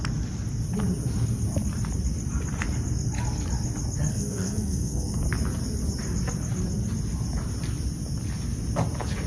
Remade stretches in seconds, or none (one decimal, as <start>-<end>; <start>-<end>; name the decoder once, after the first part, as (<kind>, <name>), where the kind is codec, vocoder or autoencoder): 4.1-5.2 (codec, SNAC)